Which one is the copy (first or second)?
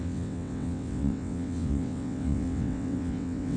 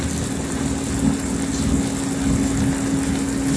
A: first